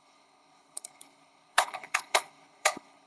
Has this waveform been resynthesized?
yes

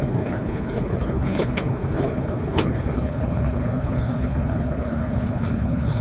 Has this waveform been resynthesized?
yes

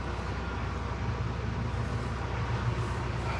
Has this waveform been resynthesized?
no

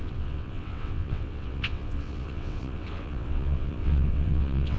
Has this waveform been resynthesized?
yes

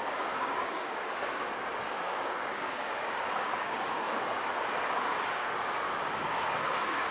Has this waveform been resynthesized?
yes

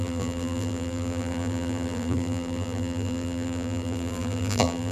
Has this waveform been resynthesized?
yes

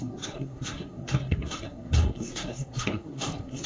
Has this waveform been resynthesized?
yes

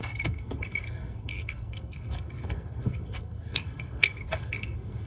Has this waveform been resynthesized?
yes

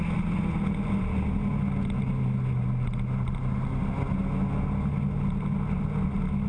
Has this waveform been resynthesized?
no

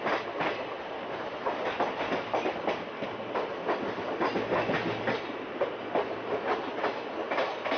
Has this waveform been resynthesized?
no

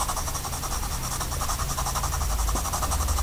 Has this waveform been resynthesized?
no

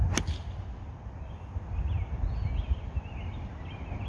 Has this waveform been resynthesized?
no